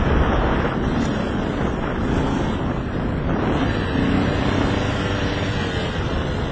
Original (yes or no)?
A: yes